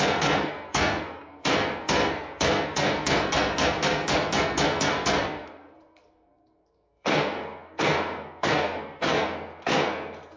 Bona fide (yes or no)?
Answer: no